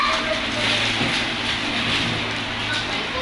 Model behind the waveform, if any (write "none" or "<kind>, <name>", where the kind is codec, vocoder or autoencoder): none